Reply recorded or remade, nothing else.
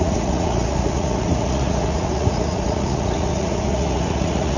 remade